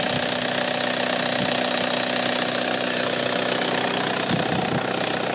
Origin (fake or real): real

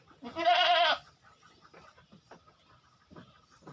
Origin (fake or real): real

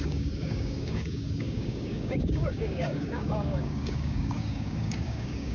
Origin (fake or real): fake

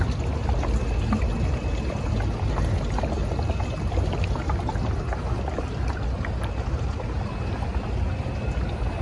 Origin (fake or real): real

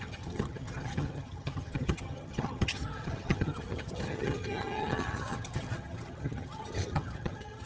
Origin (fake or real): fake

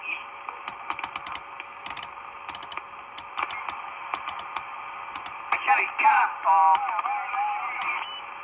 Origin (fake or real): real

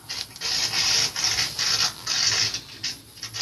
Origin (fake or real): real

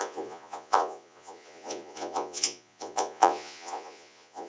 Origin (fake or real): fake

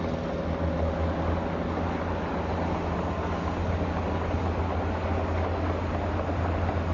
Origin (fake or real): real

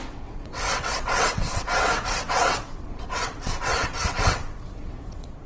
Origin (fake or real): fake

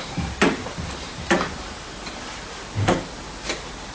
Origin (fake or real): real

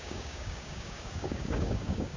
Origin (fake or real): fake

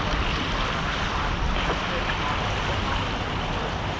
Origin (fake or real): real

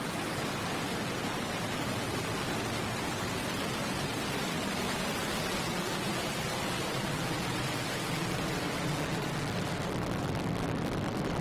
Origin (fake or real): real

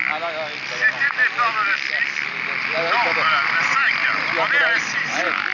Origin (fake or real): real